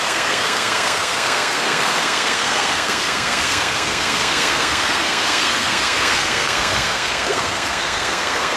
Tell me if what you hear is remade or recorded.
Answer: remade